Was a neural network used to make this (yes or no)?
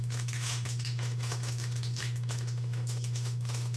yes